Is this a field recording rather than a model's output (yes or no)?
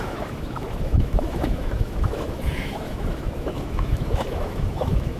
no